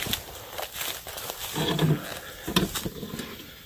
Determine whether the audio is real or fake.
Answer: real